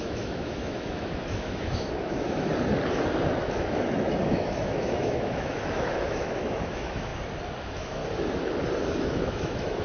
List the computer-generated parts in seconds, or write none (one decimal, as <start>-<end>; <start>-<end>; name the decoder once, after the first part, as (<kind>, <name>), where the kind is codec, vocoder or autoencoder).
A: 0.0-2.5 (autoencoder, DAC-VAE); 3.4-7.1; 7.6-8.0; 8.9-9.8